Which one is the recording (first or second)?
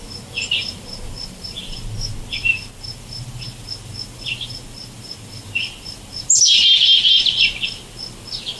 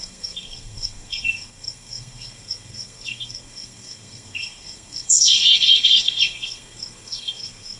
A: first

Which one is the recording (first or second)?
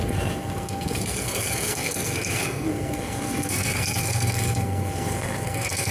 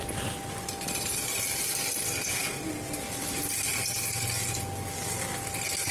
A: second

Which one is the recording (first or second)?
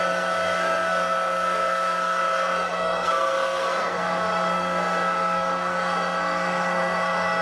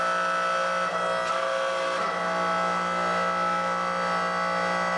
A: second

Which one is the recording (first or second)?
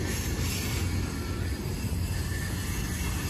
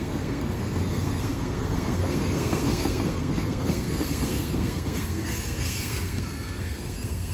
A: first